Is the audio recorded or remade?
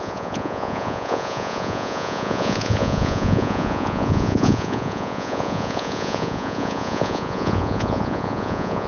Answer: remade